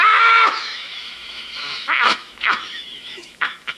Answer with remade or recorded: remade